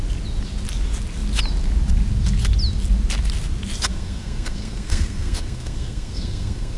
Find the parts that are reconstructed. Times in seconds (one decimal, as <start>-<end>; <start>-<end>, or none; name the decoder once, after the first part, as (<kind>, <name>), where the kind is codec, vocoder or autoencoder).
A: 3.9-6.8 (codec, SNAC)